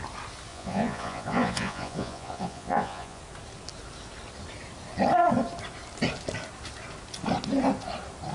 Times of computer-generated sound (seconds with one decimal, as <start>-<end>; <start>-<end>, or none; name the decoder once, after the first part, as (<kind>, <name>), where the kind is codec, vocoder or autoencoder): 0.5-3.2 (vocoder, Vocos)